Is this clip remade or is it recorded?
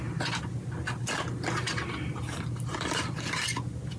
recorded